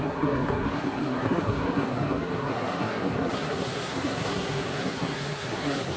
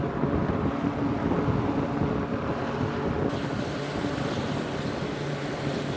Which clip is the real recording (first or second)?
second